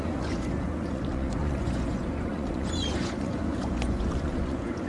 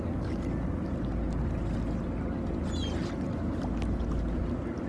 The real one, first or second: second